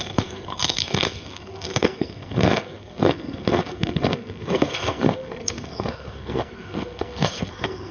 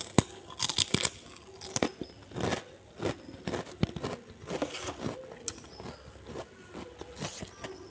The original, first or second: second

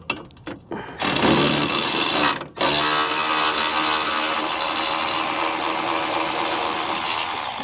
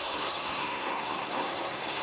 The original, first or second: first